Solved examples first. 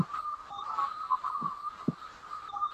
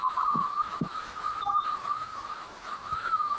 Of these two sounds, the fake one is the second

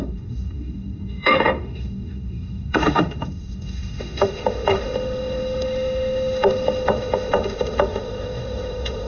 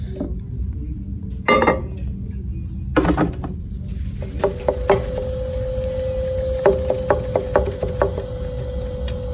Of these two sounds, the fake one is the first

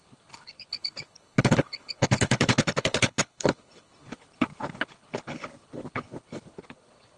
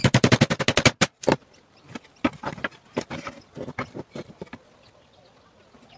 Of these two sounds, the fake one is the first